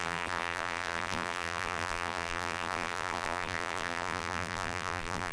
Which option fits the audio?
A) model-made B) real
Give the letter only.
A